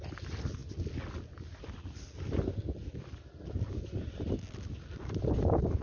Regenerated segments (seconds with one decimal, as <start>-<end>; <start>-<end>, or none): none